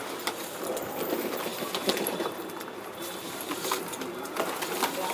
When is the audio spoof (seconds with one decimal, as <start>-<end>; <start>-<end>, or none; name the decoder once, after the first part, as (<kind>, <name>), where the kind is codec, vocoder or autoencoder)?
0.0-5.1 (vocoder, BigVGAN v2)